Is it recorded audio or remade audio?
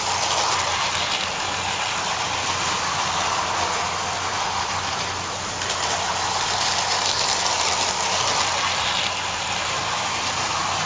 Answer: recorded